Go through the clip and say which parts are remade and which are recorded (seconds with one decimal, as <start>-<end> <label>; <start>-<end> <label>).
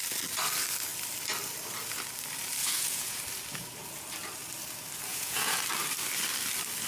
0.0-2.6 recorded; 2.6-3.2 remade; 3.2-5.1 recorded; 5.1-5.6 remade; 5.6-6.9 recorded